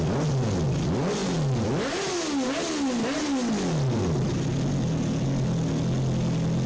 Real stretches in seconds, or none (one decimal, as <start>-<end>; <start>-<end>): 0.0-6.7